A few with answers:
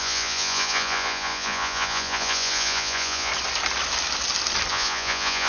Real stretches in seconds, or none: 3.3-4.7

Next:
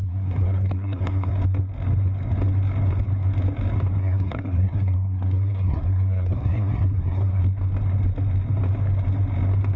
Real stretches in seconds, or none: 1.3-4.0; 7.4-9.8

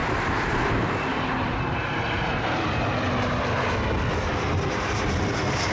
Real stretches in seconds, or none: 0.7-5.7

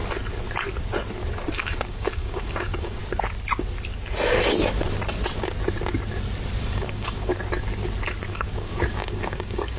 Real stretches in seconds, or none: 0.0-1.6; 3.0-6.6; 7.3-8.3

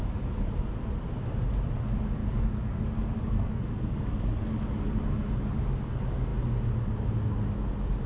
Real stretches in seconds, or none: 0.0-2.2; 4.2-8.1

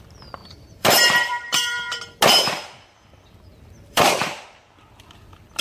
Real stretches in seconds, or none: 0.0-0.4; 2.0-3.5; 4.0-5.6

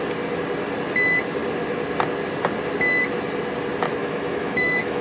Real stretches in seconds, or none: 0.0-4.0

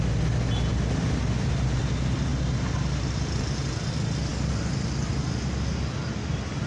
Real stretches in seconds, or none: 0.0-6.7